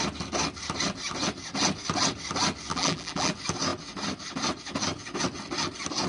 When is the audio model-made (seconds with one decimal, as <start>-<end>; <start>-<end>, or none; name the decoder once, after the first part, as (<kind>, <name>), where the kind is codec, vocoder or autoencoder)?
2.7-3.3 (vocoder, BigVGAN v2)